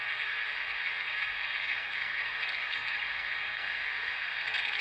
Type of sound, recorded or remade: remade